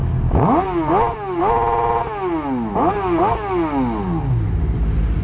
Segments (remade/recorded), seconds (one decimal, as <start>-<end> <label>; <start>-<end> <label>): 0.0-5.2 recorded